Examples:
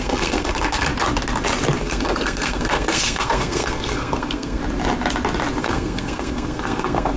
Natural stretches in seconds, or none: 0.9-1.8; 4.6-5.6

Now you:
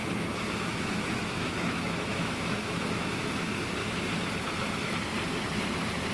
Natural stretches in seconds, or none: 3.7-6.1